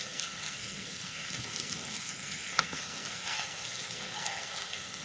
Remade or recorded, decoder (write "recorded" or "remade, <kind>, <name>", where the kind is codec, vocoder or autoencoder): remade, codec, SNAC